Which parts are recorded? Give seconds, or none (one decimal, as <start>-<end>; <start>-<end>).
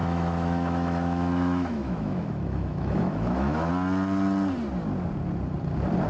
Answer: 3.7-6.1